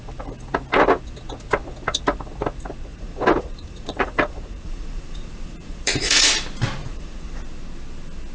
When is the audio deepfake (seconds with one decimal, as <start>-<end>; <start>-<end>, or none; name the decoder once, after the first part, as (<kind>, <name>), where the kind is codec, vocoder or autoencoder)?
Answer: 2.9-6.3 (vocoder, Vocos); 6.8-7.4